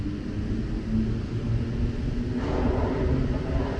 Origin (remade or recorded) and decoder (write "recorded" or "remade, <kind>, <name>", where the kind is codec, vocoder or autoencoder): recorded